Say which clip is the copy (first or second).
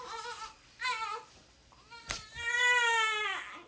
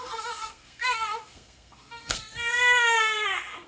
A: second